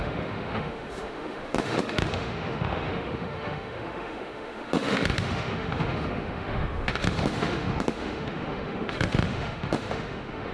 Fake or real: fake